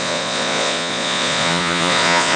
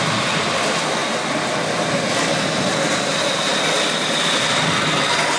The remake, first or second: first